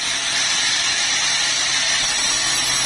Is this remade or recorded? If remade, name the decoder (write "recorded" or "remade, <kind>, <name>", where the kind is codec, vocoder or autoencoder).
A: recorded